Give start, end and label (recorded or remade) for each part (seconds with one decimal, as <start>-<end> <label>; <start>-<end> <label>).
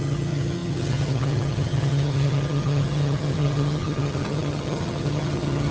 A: 0.0-5.7 remade